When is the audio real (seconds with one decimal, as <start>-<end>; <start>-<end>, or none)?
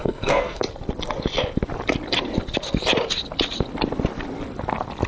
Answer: 0.6-5.1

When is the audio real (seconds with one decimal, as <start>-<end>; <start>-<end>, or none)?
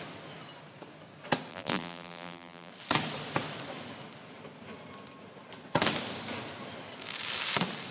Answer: 0.0-1.5; 2.7-7.9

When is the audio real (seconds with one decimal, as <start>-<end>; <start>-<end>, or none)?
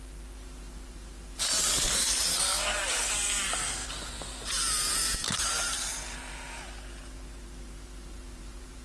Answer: none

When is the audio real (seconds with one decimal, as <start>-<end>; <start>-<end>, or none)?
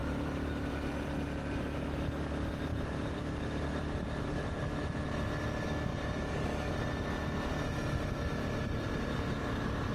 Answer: 0.9-2.7; 4.6-5.9; 6.9-9.9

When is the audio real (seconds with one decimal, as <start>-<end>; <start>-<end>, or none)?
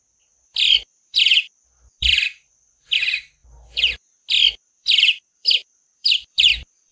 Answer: 1.3-2.0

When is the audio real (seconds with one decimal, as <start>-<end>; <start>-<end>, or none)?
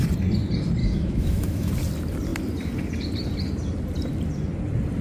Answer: 0.0-0.8; 1.7-5.0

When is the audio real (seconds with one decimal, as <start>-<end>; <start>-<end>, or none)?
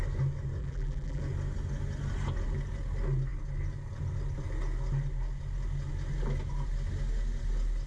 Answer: 0.0-0.6; 1.2-7.9